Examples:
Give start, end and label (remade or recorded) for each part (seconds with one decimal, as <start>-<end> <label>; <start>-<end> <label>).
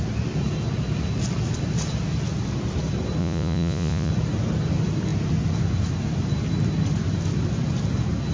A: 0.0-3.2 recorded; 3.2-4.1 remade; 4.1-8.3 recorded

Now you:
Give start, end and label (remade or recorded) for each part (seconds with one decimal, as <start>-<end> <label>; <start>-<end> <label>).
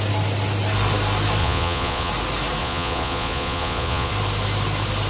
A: 0.0-1.4 recorded; 1.4-2.1 remade; 2.1-2.6 recorded; 2.6-4.1 remade; 4.1-5.1 recorded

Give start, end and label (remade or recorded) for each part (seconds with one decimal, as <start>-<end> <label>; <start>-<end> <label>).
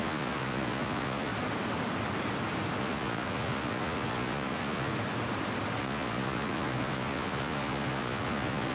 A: 0.0-1.3 remade; 1.3-2.8 recorded; 2.8-4.9 remade; 4.9-5.8 recorded; 5.8-8.7 remade